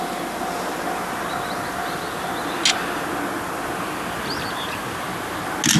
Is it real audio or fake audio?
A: real